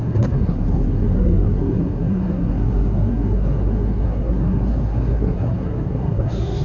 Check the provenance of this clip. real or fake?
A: fake